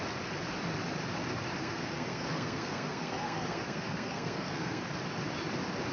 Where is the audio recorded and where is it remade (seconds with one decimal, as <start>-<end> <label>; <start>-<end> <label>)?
0.0-1.6 recorded; 1.6-4.8 remade; 4.8-5.9 recorded